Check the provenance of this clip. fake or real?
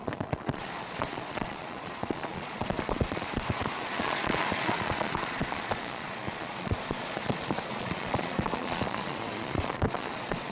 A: fake